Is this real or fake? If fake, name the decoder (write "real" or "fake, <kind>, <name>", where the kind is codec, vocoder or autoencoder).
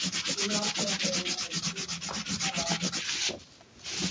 real